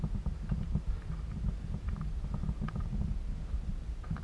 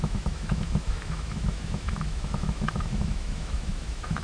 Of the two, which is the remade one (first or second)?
second